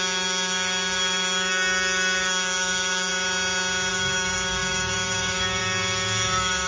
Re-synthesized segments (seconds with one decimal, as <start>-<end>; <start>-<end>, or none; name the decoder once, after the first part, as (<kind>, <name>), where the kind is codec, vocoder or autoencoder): 0.0-3.1 (codec, DAC); 3.9-6.7